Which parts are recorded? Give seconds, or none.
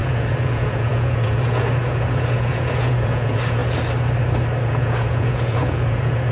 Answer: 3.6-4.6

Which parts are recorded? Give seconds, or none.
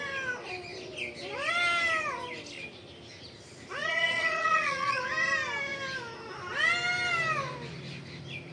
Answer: 0.0-3.8; 5.0-8.5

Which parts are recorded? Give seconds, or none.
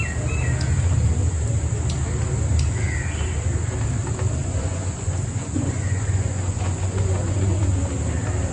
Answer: 0.0-4.4; 7.6-8.5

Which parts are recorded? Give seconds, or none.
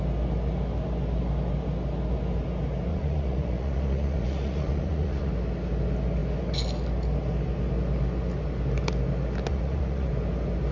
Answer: 0.0-2.9; 5.3-9.5; 10.1-10.7